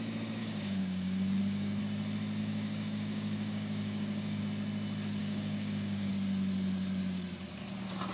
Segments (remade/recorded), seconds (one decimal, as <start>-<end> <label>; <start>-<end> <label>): 0.0-0.4 recorded; 0.4-1.8 remade; 1.8-2.4 recorded; 2.4-4.4 remade; 4.4-5.2 recorded; 5.2-6.1 remade; 6.1-8.1 recorded